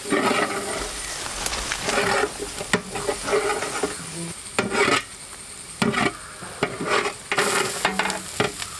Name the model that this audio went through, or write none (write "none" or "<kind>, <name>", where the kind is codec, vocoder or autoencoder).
none